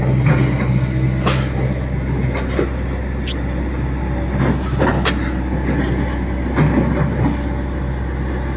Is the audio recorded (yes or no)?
yes